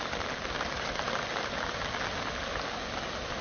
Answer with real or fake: real